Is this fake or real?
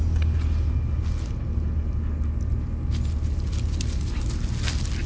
real